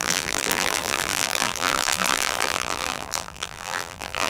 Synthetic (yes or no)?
yes